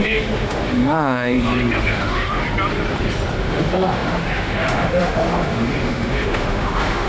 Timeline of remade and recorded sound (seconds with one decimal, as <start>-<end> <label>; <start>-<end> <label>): 0.0-2.4 remade; 2.4-3.4 recorded; 3.4-7.1 remade